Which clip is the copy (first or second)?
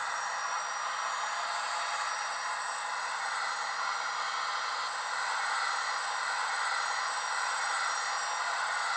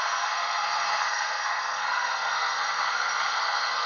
second